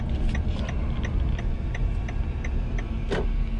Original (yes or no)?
yes